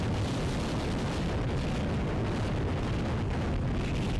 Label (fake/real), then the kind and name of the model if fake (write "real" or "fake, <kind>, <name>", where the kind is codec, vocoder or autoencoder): real